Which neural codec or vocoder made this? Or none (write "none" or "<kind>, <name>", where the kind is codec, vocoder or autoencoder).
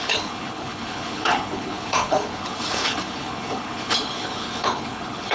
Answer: codec, HILCodec